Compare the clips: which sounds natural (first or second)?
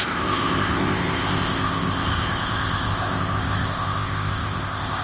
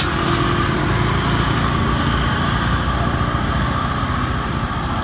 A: second